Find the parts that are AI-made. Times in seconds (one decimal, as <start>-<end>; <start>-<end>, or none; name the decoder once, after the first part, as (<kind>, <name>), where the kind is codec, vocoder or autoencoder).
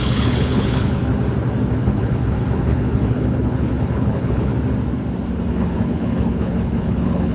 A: 0.0-1.0 (codec, HILCodec); 1.7-4.5; 5.5-7.3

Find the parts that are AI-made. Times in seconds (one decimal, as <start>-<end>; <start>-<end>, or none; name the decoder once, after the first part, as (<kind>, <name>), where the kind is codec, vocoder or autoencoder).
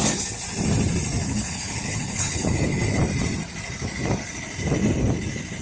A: 1.2-3.0 (codec, HILCodec)